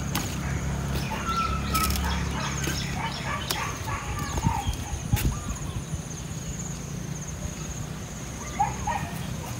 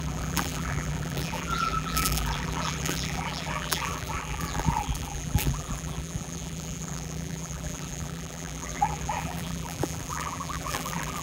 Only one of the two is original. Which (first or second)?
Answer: first